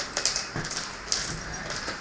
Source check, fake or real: fake